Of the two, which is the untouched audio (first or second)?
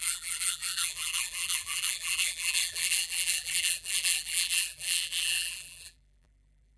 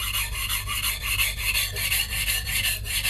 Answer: second